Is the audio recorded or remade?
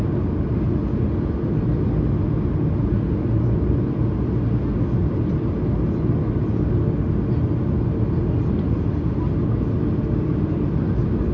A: recorded